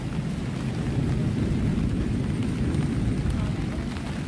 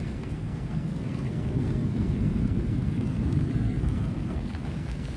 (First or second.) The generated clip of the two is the second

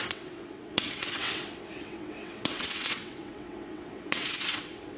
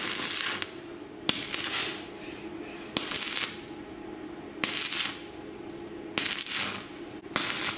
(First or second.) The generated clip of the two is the first